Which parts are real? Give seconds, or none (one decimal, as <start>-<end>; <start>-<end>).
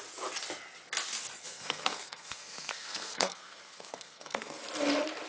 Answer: 0.0-1.4; 4.6-5.3